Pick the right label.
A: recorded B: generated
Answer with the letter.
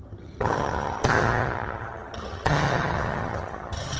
B